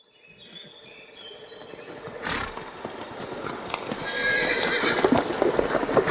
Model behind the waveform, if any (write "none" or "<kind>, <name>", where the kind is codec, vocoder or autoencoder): none